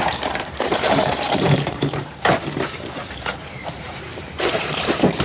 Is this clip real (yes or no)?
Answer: no